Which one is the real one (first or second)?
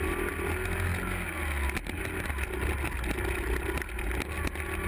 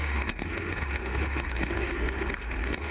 first